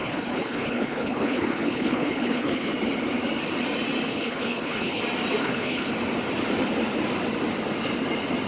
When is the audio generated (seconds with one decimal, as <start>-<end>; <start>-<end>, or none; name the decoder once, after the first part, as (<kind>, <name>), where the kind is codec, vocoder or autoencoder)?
0.0-2.7 (codec, HILCodec); 4.1-5.0; 5.4-5.9